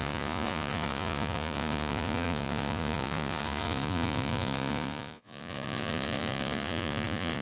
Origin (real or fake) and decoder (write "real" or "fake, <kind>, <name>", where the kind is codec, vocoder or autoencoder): fake, vocoder, Vocos